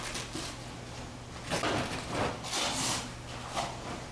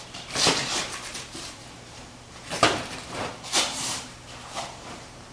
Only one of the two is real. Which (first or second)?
first